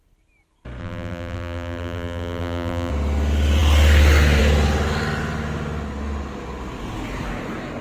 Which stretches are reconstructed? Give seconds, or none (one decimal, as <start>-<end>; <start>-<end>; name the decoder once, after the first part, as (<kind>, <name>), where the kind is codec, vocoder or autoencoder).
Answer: 0.8-2.9 (vocoder, BigVGAN v2)